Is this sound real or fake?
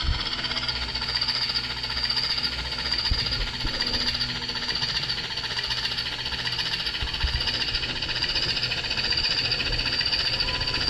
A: real